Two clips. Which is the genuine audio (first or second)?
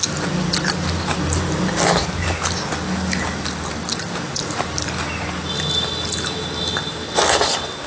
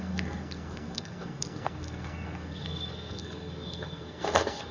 first